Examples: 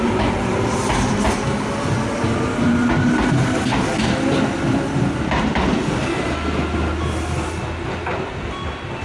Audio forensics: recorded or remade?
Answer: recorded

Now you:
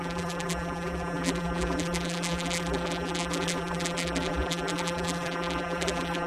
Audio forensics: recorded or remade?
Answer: remade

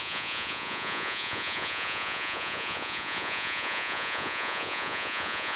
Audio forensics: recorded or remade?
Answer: remade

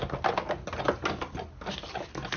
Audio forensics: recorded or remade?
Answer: recorded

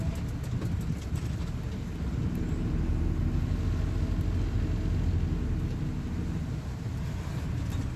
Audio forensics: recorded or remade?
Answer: recorded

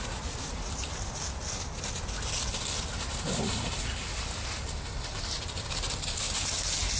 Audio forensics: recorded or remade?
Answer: recorded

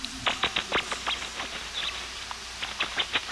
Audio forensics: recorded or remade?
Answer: recorded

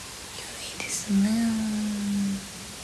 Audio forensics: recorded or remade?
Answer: recorded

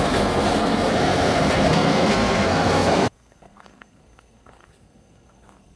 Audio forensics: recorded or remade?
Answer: remade